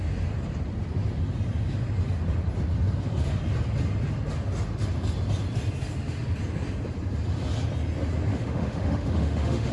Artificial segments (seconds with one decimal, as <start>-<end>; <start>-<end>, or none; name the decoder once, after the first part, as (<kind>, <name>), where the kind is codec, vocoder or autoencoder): 8.3-9.7 (autoencoder, DAC-VAE)